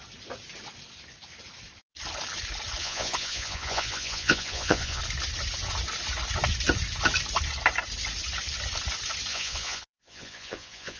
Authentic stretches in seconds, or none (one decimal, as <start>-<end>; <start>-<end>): 0.0-2.8; 5.0-9.3